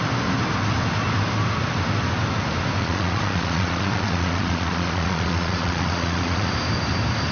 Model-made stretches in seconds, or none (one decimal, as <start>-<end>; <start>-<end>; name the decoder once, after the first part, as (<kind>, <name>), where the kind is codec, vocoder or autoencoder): 2.8-6.5 (vocoder, Vocos)